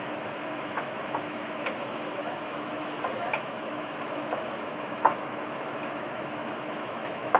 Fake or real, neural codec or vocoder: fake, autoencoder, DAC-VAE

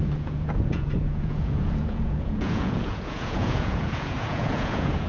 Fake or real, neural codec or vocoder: fake, vocoder, Vocos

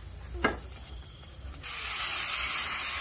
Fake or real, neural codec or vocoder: real